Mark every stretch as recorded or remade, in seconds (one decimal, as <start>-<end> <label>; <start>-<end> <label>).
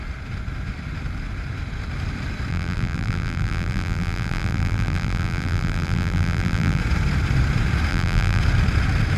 0.0-2.5 recorded; 2.5-6.8 remade; 6.8-7.9 recorded; 7.9-8.4 remade; 8.4-9.2 recorded